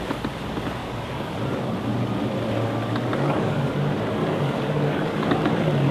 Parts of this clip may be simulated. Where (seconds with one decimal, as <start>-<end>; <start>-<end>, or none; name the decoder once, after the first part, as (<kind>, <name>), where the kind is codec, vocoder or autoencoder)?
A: 0.8-1.4 (codec, DAC); 3.1-3.7; 4.2-5.5